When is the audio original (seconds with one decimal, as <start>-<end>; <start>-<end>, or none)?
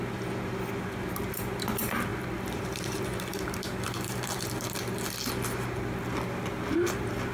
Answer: 0.0-2.1; 4.5-7.3